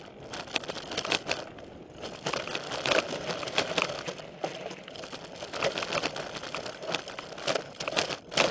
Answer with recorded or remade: recorded